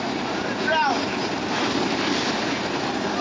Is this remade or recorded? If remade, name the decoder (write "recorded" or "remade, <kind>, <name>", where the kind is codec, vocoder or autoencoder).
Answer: recorded